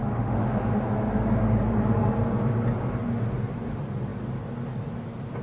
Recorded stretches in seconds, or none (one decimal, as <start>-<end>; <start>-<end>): 0.8-5.4